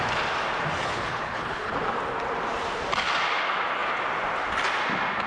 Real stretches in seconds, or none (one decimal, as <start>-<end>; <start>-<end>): 0.0-0.8; 1.7-5.3